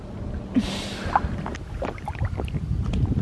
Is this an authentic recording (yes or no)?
yes